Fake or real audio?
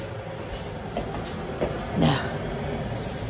real